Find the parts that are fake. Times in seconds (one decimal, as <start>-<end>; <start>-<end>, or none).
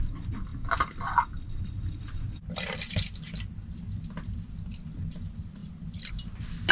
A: none